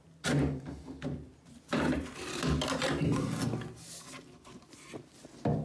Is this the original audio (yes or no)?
yes